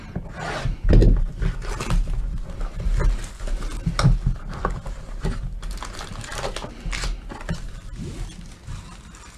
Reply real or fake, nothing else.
real